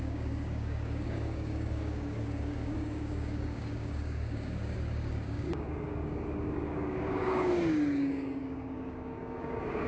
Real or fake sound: fake